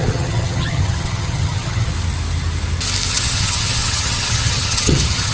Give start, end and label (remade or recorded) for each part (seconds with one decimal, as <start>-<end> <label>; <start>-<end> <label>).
0.0-1.9 remade; 1.9-3.1 recorded; 3.1-5.3 remade